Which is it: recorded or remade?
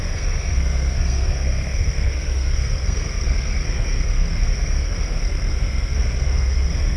remade